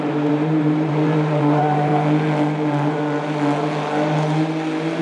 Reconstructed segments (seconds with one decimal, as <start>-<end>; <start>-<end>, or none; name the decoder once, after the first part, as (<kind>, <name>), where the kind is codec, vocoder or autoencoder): 0.0-1.9 (vocoder, BigVGAN v2)